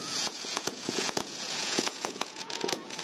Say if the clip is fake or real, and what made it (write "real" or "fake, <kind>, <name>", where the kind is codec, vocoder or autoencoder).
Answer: fake, vocoder, Vocos